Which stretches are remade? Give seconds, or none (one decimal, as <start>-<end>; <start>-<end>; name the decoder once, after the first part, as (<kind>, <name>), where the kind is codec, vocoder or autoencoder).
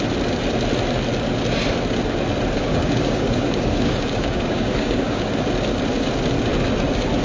2.6-5.3 (codec, DAC)